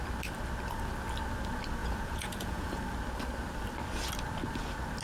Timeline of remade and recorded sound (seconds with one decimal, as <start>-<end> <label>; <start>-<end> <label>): 0.0-1.8 recorded; 1.8-2.8 remade; 2.8-5.0 recorded